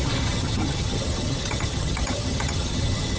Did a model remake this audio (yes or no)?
yes